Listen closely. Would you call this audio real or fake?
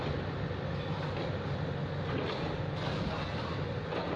real